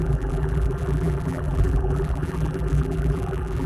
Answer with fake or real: fake